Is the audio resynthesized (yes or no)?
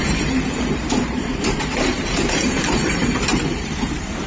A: yes